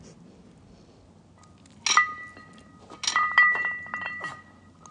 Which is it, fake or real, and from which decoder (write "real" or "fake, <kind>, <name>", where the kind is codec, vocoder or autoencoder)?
real